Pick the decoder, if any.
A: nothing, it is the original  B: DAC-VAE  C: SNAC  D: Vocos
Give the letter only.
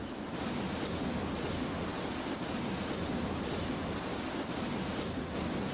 A